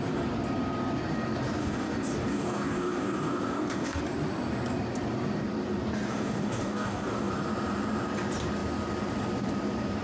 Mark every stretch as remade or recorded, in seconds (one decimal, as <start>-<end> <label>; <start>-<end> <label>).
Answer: 0.0-1.6 recorded; 1.6-4.0 remade; 4.0-6.1 recorded; 6.1-7.3 remade; 7.3-10.0 recorded